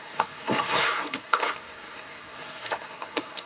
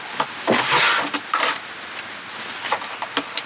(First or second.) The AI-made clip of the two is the first